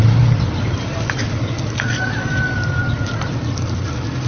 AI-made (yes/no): no